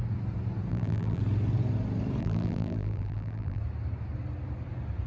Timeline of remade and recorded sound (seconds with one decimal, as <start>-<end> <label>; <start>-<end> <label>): 0.0-0.7 recorded; 0.7-1.2 remade; 1.2-2.2 recorded; 2.2-3.6 remade; 3.6-5.1 recorded